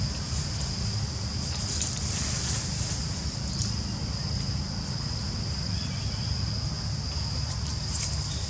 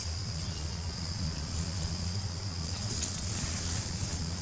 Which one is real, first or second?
first